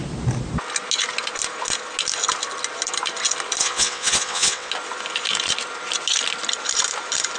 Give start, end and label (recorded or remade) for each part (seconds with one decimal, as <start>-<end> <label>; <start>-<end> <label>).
0.0-3.6 recorded; 3.6-4.7 remade; 4.7-7.4 recorded